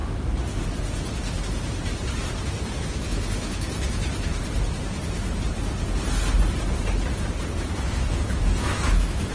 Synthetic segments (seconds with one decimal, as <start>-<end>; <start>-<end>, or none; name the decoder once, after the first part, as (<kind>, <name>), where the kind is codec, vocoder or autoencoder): 2.7-4.3 (autoencoder, DAC-VAE); 7.8-9.3